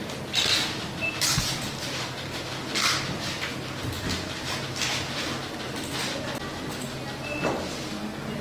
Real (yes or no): yes